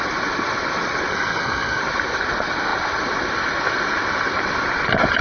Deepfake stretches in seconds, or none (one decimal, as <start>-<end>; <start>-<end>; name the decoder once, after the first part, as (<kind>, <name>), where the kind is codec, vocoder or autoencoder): 1.1-1.8 (codec, SNAC)

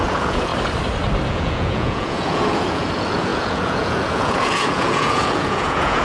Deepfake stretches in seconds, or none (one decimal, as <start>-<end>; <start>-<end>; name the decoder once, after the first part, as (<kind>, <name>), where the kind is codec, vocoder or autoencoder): 0.0-0.5 (vocoder, Vocos); 1.3-6.0